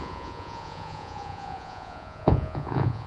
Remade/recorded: remade